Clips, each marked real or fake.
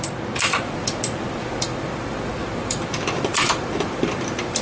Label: fake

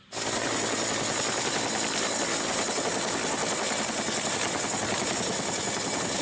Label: real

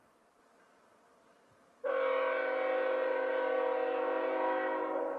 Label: real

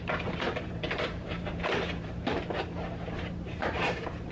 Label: fake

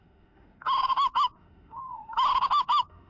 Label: fake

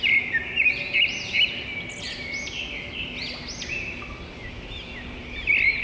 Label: real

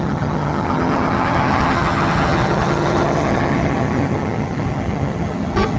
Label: fake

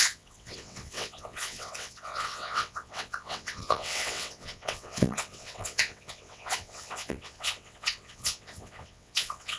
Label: fake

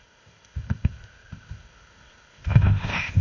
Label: fake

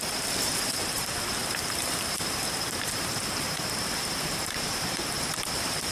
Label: fake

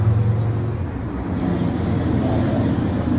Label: real